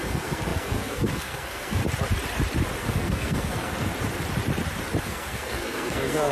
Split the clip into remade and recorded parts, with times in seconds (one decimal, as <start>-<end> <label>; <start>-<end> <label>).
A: 0.0-1.8 remade; 1.8-2.8 recorded; 2.8-3.9 remade; 3.9-5.0 recorded; 5.0-6.3 remade